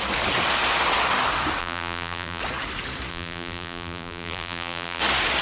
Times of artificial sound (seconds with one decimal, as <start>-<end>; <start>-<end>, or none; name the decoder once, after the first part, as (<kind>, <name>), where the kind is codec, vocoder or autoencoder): 1.6-2.4 (vocoder, BigVGAN v2); 3.1-5.0

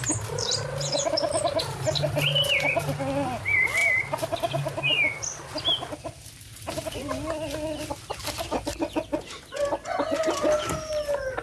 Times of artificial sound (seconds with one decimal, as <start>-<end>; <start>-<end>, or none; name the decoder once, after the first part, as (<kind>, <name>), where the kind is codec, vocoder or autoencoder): none